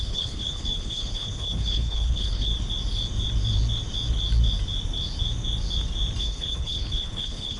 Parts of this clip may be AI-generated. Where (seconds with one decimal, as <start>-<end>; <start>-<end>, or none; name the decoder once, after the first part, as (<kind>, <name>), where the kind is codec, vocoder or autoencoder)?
0.0-2.5 (codec, HILCodec); 6.2-7.6

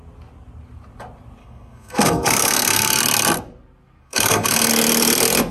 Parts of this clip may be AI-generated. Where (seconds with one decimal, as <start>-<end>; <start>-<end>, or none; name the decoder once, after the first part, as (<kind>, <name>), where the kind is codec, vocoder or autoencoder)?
1.4-3.0 (codec, SNAC); 4.0-4.7

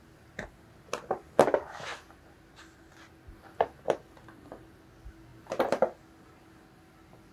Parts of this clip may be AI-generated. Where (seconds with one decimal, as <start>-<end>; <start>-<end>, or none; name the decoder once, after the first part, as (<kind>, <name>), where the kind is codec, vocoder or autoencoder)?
none